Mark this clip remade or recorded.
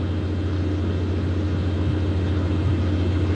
recorded